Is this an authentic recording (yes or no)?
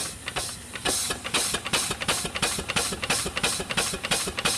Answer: yes